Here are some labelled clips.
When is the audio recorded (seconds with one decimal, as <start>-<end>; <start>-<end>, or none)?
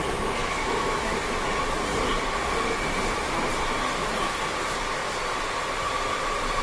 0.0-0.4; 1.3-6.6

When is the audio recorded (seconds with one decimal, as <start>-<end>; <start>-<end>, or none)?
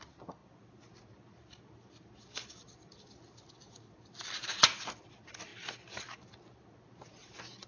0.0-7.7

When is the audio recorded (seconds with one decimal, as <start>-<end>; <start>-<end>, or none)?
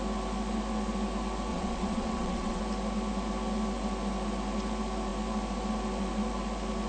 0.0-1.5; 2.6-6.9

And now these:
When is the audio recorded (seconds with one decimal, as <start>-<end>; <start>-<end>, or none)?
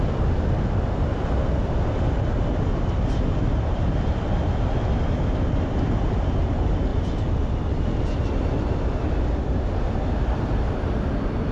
0.0-11.5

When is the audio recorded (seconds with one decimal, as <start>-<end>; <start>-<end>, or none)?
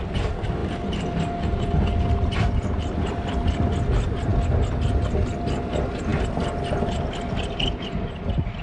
0.0-8.6